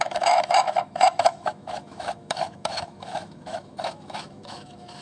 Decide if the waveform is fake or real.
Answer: fake